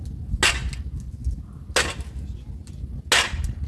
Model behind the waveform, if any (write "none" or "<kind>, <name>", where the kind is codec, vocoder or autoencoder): none